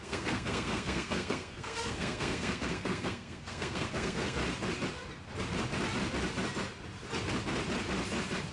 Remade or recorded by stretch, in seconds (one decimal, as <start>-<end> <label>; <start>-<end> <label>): 0.0-4.4 remade; 4.4-8.5 recorded